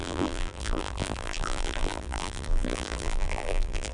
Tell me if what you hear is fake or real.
fake